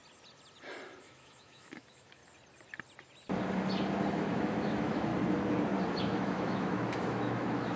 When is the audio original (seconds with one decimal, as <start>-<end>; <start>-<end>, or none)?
0.0-1.0; 2.2-4.2; 5.1-6.0